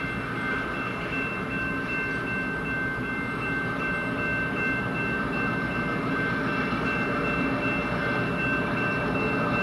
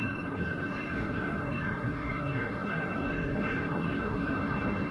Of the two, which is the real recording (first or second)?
first